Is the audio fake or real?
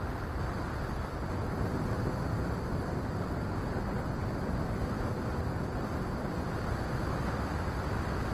real